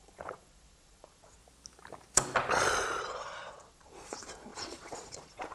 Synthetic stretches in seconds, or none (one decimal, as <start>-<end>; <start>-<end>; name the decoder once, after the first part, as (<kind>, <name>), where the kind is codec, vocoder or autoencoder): 0.0-1.4 (vocoder, Vocos); 3.0-5.5